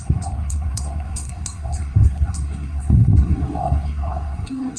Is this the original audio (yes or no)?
no